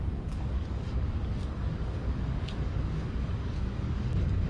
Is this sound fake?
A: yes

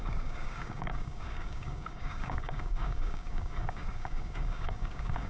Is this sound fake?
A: yes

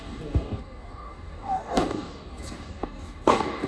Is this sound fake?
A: yes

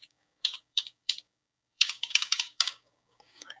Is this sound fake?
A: yes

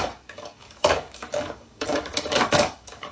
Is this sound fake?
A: yes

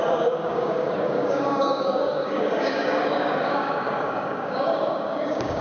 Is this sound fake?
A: yes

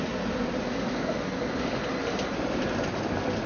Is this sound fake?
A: no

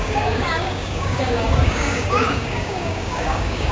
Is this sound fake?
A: yes